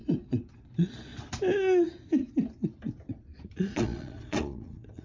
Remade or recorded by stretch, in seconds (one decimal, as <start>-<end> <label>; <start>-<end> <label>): 0.0-1.1 remade; 1.1-3.1 recorded; 3.1-5.0 remade